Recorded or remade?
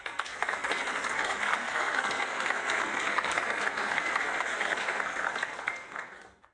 remade